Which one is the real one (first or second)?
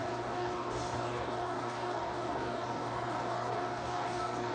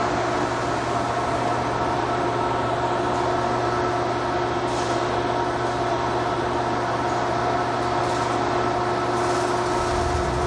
second